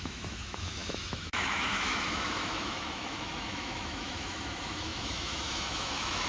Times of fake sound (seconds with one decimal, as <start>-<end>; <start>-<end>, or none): 0.0-6.3